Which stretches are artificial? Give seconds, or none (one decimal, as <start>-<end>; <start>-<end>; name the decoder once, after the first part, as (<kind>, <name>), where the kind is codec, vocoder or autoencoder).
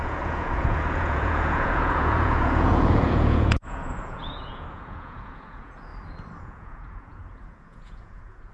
0.0-5.9 (vocoder, Vocos); 6.4-8.5